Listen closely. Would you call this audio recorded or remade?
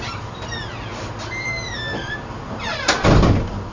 recorded